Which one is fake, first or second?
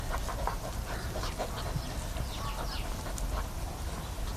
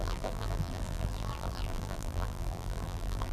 second